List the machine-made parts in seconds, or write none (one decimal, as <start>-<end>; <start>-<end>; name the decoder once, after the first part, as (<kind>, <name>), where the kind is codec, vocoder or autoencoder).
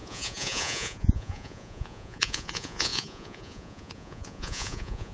0.0-5.1 (vocoder, Vocos)